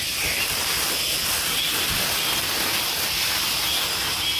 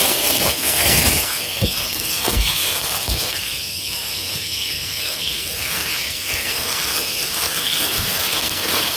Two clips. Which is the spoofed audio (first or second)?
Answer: second